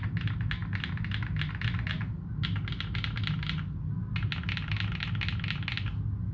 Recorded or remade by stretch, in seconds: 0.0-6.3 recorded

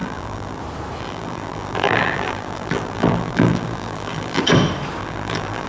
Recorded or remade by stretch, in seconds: 0.0-0.6 remade; 0.6-1.0 recorded; 1.0-4.4 remade; 4.4-5.0 recorded; 5.0-5.7 remade

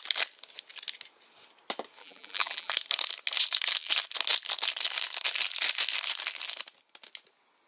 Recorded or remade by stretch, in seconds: 0.0-2.0 recorded; 2.0-2.7 remade; 2.7-7.7 recorded